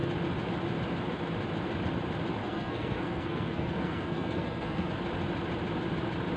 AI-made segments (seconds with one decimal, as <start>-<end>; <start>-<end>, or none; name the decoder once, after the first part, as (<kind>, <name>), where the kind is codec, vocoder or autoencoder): 2.4-4.9 (codec, SNAC)